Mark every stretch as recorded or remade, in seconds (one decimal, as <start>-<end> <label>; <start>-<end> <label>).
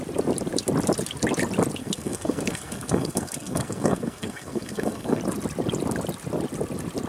0.0-1.8 recorded; 1.8-5.2 remade; 5.2-7.1 recorded